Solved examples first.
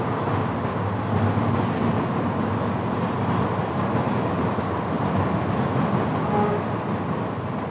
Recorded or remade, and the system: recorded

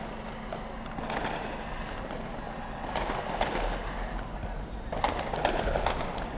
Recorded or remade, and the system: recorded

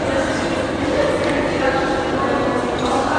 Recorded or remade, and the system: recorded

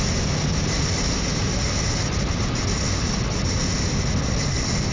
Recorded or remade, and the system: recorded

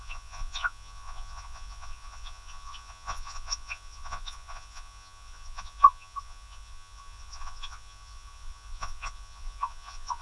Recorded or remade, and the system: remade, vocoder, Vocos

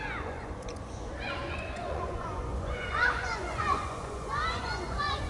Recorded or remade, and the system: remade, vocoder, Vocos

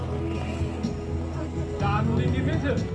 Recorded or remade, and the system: recorded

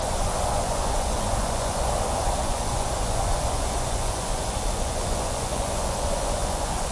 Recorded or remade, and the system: remade, vocoder, Vocos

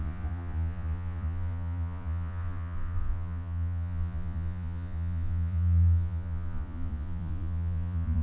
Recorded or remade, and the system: remade, vocoder, Vocos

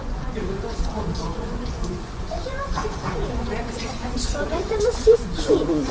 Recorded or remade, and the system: remade, vocoder, Vocos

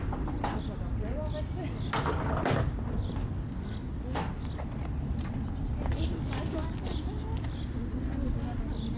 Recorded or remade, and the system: recorded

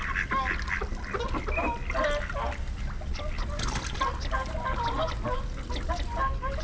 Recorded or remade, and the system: recorded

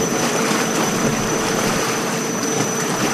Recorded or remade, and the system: recorded